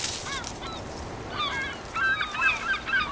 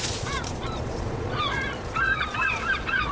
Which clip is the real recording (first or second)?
first